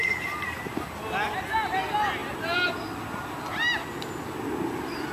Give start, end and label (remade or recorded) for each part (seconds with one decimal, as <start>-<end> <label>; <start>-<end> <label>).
0.0-5.1 recorded